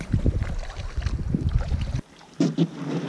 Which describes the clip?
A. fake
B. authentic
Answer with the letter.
B